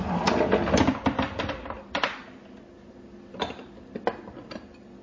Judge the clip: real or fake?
real